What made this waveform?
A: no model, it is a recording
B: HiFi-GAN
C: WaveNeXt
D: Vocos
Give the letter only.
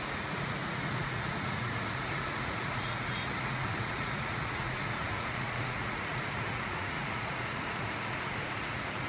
D